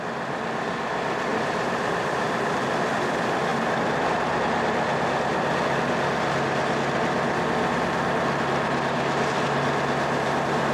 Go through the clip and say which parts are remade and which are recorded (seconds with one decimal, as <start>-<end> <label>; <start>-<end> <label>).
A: 0.0-1.3 recorded; 1.3-2.7 remade; 2.7-10.7 recorded